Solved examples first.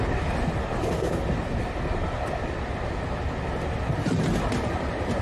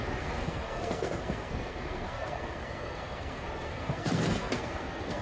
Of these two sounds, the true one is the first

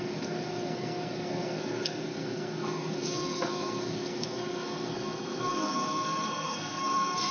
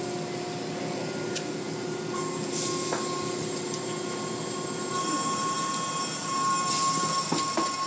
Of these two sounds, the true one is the second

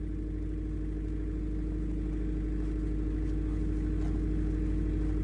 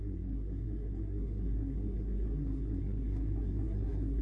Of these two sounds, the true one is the first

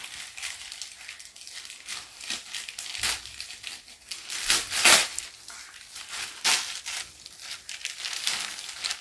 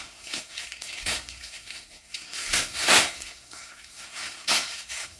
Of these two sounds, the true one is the first